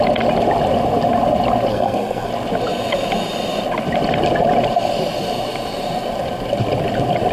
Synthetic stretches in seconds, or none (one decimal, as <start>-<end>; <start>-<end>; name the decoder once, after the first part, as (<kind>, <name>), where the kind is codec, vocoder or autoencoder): 1.7-2.3 (codec, SNAC)